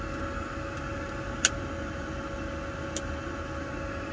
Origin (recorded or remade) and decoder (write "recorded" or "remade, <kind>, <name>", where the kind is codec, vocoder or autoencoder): recorded